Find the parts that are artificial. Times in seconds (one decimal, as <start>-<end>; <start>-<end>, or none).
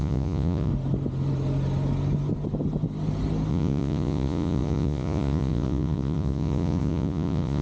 0.0-0.7; 3.5-7.6